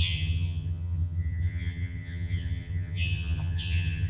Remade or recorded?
remade